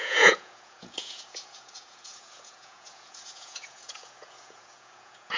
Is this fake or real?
fake